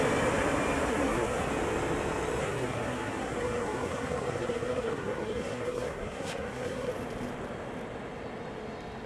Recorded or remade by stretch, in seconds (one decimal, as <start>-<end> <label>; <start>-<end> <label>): 0.0-0.9 recorded; 0.9-1.5 remade; 1.5-2.4 recorded; 2.4-6.9 remade; 6.9-9.1 recorded